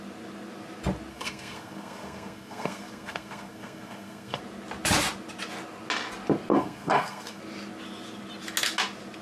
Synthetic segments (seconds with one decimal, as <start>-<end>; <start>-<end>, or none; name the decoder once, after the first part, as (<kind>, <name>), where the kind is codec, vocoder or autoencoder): 1.1-4.4 (codec, SNAC); 6.5-7.4